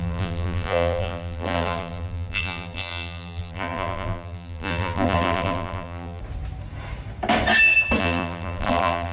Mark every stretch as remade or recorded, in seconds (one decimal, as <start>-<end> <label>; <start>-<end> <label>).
0.0-6.2 remade; 6.2-8.0 recorded; 8.0-9.1 remade